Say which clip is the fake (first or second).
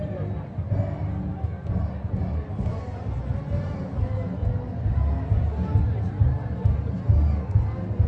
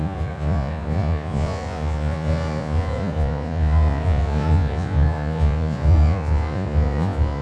second